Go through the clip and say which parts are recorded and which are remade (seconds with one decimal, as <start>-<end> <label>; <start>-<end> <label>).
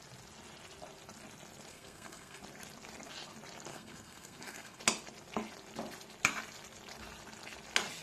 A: 0.0-1.7 recorded; 1.7-2.4 remade; 2.4-3.7 recorded; 3.7-4.8 remade; 4.8-8.0 recorded